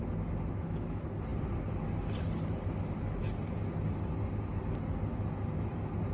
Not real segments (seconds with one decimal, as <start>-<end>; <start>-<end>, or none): none